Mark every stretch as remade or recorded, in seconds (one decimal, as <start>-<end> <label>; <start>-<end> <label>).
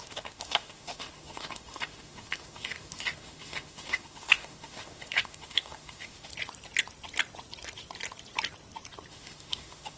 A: 0.0-6.3 remade; 6.3-9.1 recorded; 9.1-10.0 remade